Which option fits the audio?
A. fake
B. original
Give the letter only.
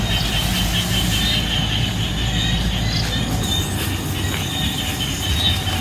B